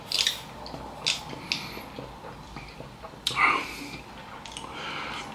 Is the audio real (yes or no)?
yes